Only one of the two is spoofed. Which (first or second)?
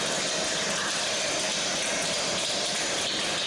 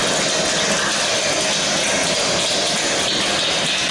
first